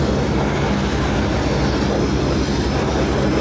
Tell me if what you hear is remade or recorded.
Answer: recorded